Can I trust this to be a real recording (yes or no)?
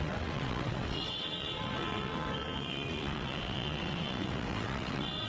no